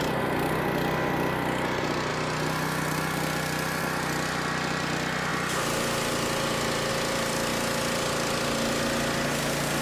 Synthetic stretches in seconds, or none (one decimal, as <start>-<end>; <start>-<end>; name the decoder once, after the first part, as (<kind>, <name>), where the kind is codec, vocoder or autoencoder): none